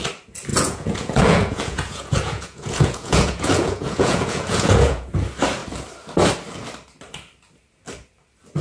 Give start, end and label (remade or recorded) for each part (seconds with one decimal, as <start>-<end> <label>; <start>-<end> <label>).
0.0-0.5 recorded; 0.5-5.1 remade; 5.1-8.6 recorded